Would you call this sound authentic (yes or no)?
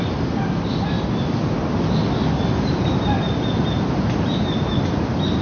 yes